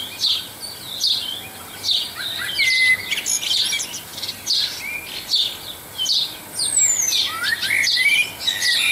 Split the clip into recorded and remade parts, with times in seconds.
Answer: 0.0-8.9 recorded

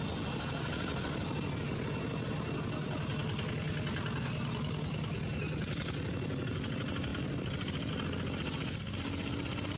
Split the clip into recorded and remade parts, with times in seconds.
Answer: 0.0-7.1 recorded; 7.1-7.9 remade; 7.9-9.8 recorded

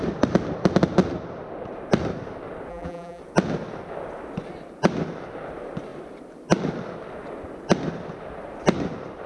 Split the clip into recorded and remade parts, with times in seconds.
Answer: 0.0-2.7 recorded; 2.7-3.2 remade; 3.2-9.3 recorded